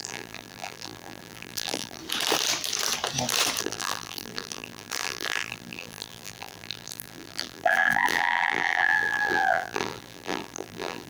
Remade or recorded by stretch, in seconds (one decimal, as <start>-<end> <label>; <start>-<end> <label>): 0.0-2.0 remade; 2.0-3.6 recorded; 3.6-11.1 remade